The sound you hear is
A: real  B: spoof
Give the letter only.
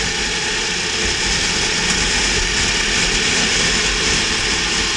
A